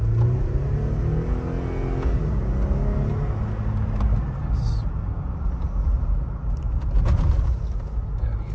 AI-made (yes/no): no